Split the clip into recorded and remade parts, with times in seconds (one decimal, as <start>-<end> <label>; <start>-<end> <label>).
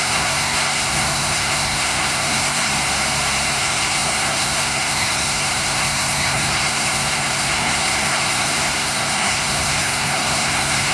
0.0-2.7 remade; 2.7-3.6 recorded; 3.6-10.9 remade